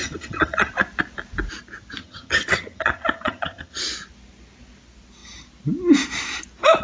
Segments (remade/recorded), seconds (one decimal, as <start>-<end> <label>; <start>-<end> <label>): 0.0-0.7 remade; 0.7-2.0 recorded; 2.0-3.8 remade; 3.8-6.8 recorded

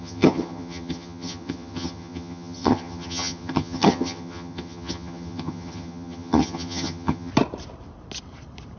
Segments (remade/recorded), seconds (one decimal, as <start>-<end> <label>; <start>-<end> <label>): 0.0-7.3 remade; 7.3-8.8 recorded

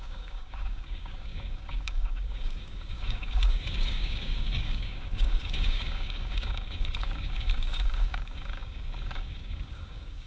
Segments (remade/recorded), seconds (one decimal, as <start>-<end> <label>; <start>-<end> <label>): 0.0-10.3 remade

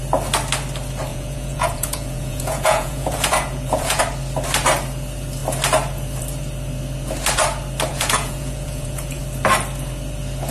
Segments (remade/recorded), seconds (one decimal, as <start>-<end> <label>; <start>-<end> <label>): 0.0-1.1 recorded; 1.1-4.0 remade; 4.0-7.9 recorded; 7.9-9.2 remade; 9.2-10.5 recorded

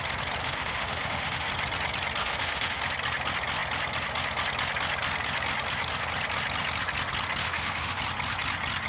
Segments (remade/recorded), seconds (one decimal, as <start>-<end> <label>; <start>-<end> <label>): 0.0-0.4 recorded; 0.4-1.5 remade; 1.5-2.2 recorded; 2.2-2.8 remade; 2.8-7.4 recorded; 7.4-8.0 remade; 8.0-8.9 recorded

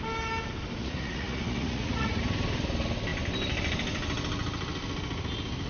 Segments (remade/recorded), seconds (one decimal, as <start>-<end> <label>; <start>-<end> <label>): 0.0-0.8 recorded; 0.8-2.2 remade; 2.2-5.7 recorded